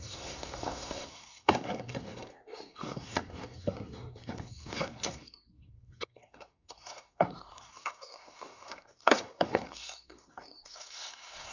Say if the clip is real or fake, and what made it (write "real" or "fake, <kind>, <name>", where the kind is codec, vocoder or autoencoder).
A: fake, codec, SNAC